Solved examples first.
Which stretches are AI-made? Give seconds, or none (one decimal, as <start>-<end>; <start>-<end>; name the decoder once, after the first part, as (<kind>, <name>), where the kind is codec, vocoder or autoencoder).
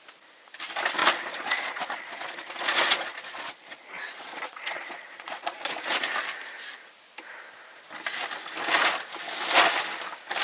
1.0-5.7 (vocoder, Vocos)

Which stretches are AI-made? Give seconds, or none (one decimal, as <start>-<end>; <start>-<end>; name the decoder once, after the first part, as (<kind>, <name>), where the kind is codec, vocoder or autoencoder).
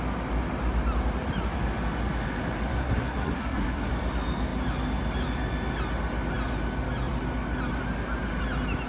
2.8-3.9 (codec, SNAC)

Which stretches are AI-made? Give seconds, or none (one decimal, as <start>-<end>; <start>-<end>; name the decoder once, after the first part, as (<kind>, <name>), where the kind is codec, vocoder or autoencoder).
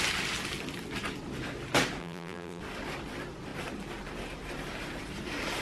2.0-2.6 (vocoder, BigVGAN v2)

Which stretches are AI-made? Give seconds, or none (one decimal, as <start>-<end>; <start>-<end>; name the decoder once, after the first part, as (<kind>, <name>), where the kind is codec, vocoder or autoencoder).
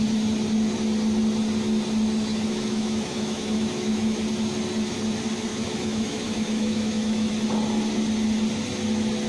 2.3-4.2 (autoencoder, DAC-VAE); 5.5-7.3